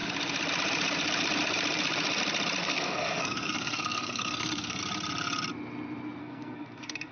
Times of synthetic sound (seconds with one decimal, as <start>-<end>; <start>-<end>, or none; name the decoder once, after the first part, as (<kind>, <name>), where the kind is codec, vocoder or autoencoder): 2.6-4.8 (codec, SNAC); 6.2-7.1